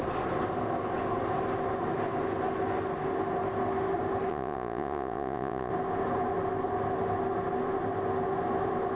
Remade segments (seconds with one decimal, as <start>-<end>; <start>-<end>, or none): 4.3-5.7